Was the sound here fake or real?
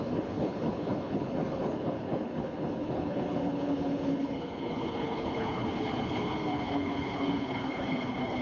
fake